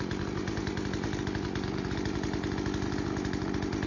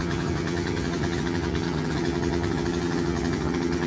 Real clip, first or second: first